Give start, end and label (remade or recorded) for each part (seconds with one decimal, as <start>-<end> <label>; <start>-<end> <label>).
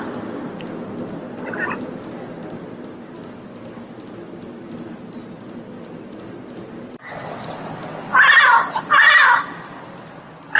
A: 0.0-10.6 recorded